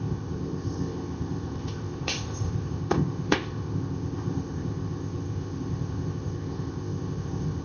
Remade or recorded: remade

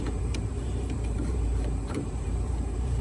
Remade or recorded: remade